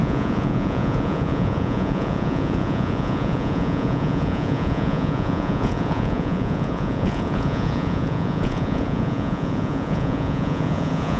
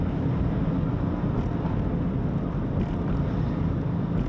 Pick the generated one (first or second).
first